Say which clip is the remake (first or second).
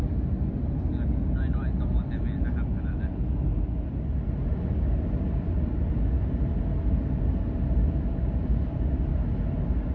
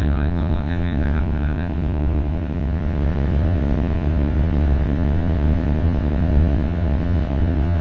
second